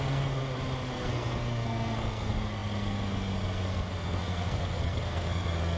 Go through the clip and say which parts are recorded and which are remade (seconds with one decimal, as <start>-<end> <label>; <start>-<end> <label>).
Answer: 0.0-0.4 remade; 0.4-0.9 recorded; 0.9-5.8 remade